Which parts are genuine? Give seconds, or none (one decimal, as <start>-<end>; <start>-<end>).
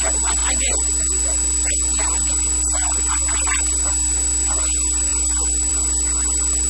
0.0-6.7